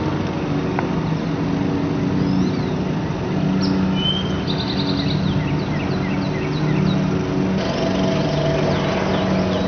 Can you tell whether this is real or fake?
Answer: real